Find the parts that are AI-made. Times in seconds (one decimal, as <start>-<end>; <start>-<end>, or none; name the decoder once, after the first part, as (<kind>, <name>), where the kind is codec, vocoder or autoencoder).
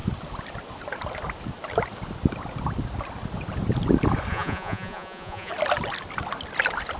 4.3-5.5 (vocoder, Vocos)